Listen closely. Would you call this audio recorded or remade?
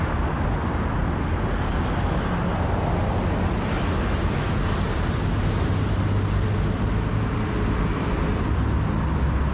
recorded